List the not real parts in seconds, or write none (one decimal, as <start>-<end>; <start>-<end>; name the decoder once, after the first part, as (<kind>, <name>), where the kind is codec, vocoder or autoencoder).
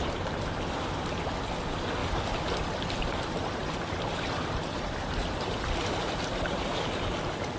0.0-2.0 (vocoder, BigVGAN v2); 3.0-7.6